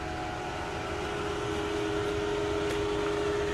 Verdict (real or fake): real